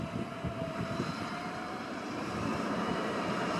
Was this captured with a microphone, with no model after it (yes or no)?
no